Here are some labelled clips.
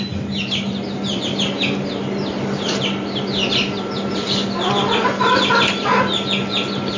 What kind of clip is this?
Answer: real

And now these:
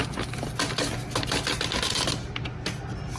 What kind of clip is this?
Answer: real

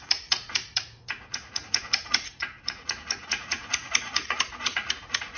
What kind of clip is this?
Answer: fake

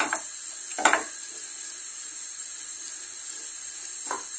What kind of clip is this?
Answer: real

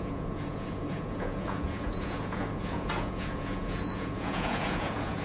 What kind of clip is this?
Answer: fake